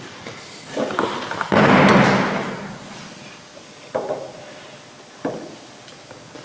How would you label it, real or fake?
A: real